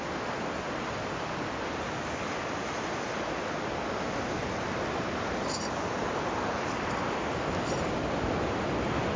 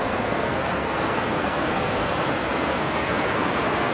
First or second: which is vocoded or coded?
second